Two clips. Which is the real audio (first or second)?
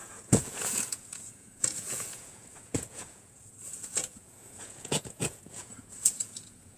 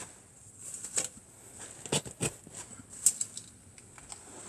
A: second